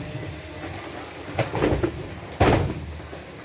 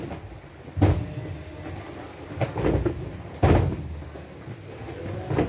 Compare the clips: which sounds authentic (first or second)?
second